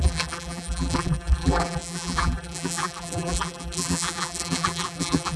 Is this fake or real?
fake